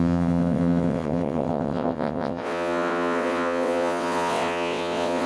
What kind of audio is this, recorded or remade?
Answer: remade